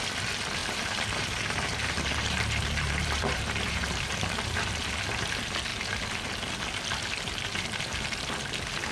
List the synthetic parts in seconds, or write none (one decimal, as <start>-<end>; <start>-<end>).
0.6-4.7